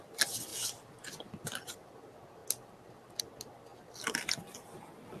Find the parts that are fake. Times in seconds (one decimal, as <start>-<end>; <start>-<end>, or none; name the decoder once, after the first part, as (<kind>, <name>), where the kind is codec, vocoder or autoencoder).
none